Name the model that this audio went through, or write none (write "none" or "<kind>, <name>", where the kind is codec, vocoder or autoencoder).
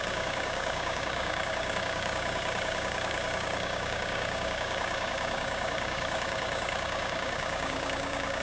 codec, DAC